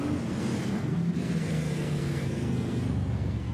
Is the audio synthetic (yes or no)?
yes